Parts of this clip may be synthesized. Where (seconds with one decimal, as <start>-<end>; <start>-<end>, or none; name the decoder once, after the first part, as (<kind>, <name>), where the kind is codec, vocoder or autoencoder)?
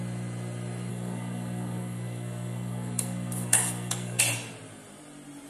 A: 0.9-4.2 (codec, SNAC)